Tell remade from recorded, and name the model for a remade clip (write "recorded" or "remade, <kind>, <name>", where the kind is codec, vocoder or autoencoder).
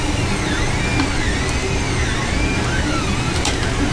recorded